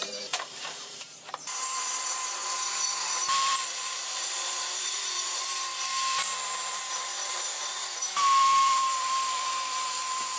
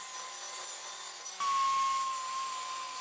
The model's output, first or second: first